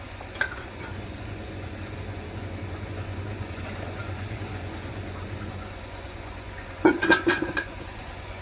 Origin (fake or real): fake